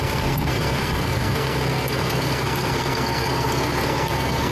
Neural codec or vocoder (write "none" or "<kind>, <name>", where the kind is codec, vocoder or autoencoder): codec, SNAC